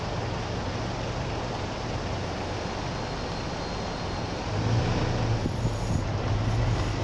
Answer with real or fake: real